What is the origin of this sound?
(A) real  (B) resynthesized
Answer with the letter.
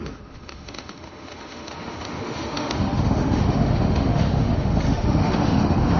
B